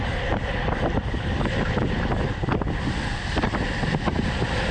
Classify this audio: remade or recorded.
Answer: recorded